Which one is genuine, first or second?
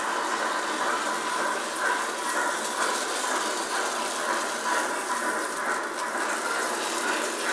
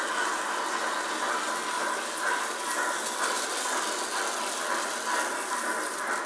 second